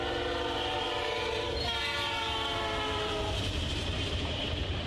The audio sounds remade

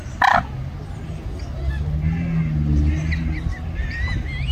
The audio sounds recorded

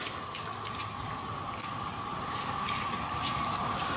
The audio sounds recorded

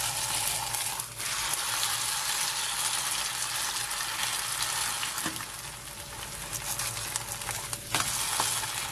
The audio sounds recorded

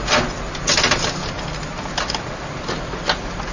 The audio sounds recorded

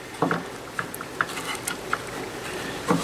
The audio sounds remade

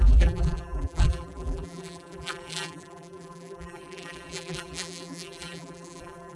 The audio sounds remade